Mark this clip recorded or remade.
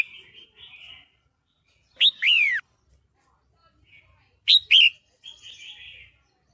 recorded